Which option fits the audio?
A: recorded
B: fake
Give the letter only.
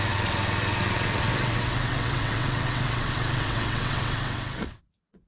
B